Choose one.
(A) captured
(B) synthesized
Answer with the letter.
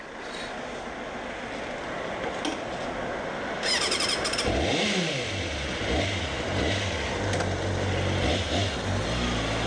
A